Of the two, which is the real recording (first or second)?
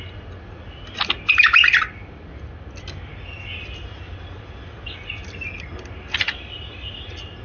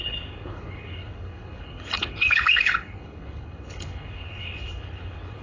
first